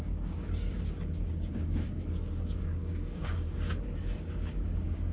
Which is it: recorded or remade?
remade